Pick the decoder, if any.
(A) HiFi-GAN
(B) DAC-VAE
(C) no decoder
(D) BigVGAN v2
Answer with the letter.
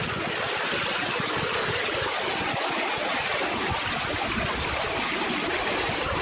C